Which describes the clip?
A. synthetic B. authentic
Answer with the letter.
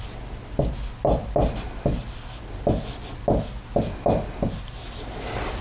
B